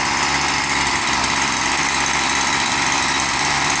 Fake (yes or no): yes